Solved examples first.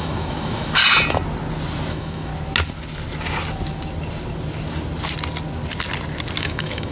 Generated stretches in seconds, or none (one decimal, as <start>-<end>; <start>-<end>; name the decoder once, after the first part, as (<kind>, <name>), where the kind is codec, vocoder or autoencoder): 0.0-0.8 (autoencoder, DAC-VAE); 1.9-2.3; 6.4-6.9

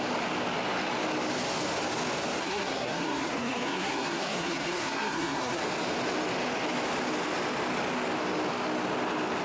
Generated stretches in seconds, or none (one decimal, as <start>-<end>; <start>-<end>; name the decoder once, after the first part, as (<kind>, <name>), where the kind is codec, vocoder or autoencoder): 2.4-5.6 (codec, SNAC)

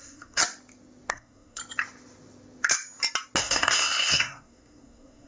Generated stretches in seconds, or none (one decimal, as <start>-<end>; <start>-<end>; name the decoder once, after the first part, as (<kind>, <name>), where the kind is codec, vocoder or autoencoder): 0.0-0.4 (codec, SNAC); 1.1-1.6; 3.4-5.3

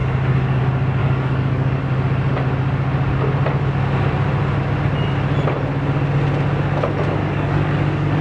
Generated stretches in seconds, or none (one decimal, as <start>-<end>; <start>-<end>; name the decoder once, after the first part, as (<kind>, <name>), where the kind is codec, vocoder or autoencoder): 0.0-0.6 (codec, DAC); 1.0-1.8; 7.2-8.2